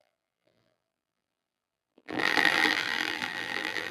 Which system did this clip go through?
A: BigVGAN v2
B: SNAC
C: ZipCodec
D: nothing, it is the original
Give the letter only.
A